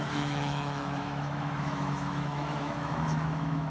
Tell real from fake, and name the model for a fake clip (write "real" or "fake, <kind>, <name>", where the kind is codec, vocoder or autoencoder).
fake, autoencoder, DAC-VAE